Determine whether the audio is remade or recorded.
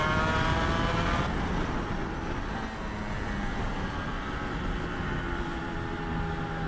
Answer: recorded